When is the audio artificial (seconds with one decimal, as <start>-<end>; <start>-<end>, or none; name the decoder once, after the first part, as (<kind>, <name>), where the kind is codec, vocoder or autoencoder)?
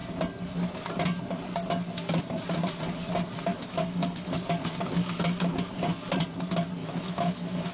3.5-4.4 (autoencoder, DAC-VAE); 5.0-5.5; 6.8-7.7